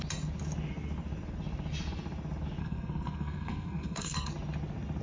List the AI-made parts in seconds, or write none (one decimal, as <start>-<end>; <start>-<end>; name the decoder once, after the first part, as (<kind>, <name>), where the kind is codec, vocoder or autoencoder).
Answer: 2.6-4.3 (codec, SNAC)